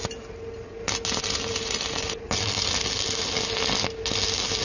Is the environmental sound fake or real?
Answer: real